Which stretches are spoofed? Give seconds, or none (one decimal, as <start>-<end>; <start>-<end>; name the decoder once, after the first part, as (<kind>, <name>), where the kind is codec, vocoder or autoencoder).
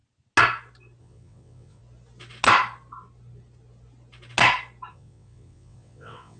1.0-1.8 (vocoder, WaveNeXt); 4.9-6.4